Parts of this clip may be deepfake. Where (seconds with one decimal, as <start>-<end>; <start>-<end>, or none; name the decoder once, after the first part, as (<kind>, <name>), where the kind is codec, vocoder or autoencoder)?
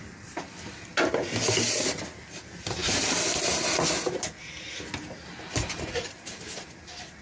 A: none